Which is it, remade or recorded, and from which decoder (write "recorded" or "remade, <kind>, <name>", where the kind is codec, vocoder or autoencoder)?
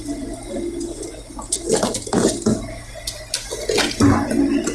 recorded